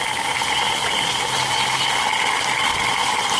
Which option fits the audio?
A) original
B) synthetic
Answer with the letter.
A